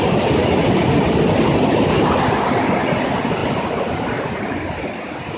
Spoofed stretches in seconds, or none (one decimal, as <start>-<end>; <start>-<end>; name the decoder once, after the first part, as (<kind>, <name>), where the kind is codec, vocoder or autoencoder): 0.4-1.1 (vocoder, BigVGAN v2); 3.4-4.2